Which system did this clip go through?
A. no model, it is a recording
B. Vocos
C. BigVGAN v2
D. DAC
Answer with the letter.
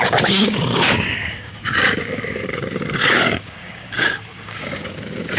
D